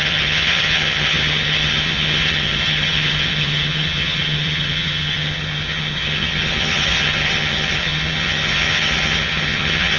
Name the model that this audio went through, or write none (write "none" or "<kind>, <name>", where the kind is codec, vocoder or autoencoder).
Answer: vocoder, HiFi-GAN